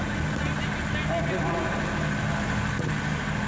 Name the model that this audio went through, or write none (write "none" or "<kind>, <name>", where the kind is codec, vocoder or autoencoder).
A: none